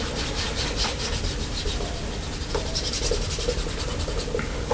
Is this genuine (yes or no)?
yes